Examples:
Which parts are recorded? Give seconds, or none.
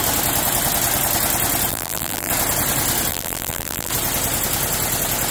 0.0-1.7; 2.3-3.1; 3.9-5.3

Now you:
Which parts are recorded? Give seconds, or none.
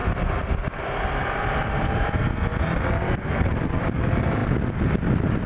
0.0-5.5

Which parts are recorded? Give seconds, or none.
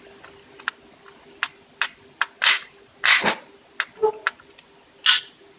0.0-5.6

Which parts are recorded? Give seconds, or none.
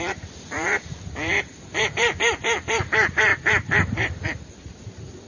none